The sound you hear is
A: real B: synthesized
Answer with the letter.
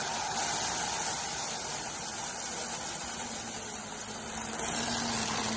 A